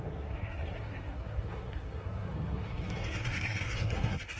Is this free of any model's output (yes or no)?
no